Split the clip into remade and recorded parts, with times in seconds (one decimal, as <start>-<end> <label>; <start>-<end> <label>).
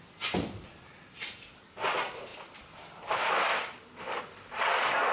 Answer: 0.0-5.1 recorded